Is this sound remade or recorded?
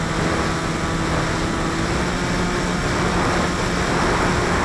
recorded